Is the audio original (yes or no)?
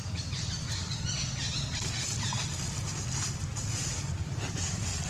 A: yes